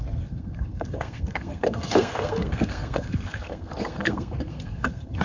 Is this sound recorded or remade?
remade